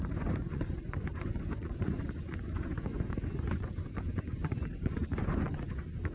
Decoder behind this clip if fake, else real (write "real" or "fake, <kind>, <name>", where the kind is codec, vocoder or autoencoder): fake, vocoder, Vocos